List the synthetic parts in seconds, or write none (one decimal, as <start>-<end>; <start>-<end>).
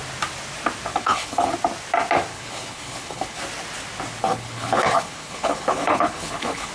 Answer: 0.9-1.5; 2.3-3.4; 4.2-6.7